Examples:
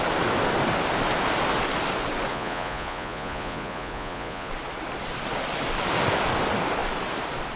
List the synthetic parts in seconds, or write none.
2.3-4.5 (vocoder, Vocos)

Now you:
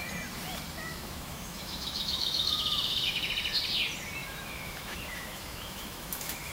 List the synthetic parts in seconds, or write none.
0.9-3.3 (autoencoder, DAC-VAE); 4.2-6.5